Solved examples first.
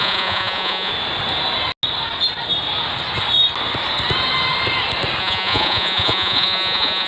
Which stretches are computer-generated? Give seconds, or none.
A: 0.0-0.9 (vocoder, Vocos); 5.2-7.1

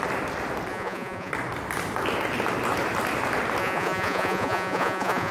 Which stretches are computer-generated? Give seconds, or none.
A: 0.7-1.3 (vocoder, Vocos); 3.6-5.3

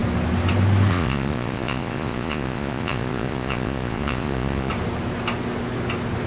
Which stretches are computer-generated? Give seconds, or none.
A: 0.9-4.7 (vocoder, Vocos)

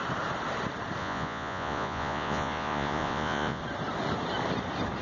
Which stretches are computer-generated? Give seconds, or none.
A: 1.0-3.6 (vocoder, Vocos)

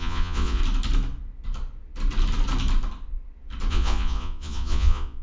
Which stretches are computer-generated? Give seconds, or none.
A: 0.0-0.6 (vocoder, Vocos); 3.7-5.2

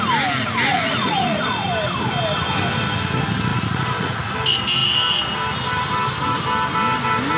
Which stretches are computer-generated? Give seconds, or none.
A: 0.7-1.7 (vocoder, Vocos); 3.5-4.3

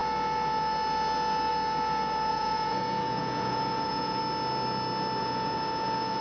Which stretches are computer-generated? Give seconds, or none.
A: 2.3-4.2 (vocoder, Vocos); 5.2-6.2

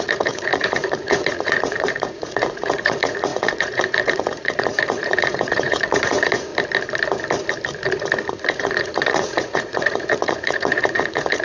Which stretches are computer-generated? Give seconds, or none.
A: 0.0-6.5 (vocoder, Vocos); 8.3-11.4